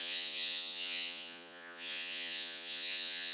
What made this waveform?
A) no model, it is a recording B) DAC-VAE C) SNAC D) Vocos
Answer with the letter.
D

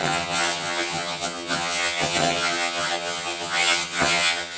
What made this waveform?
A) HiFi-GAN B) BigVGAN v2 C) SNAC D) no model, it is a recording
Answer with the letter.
A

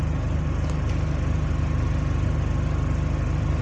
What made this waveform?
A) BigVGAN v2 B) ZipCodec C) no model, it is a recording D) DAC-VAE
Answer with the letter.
C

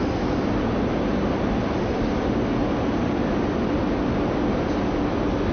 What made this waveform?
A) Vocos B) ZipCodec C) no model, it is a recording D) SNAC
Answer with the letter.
C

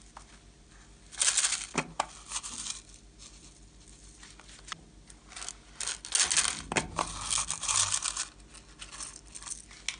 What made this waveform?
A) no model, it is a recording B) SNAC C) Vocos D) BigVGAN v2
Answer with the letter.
A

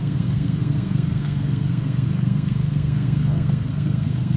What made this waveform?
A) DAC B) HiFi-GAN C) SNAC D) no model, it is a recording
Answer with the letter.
C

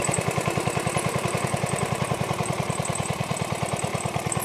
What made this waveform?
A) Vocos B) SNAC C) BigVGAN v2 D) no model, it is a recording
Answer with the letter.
C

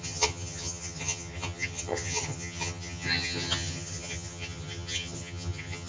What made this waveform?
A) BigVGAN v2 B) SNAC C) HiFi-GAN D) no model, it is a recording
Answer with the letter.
C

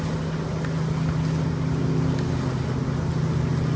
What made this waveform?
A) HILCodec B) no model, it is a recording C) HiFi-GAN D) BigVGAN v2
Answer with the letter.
B